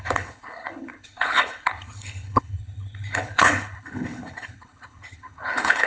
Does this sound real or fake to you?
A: fake